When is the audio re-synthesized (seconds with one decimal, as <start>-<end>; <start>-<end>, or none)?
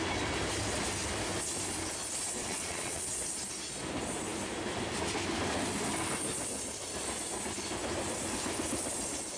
2.4-3.0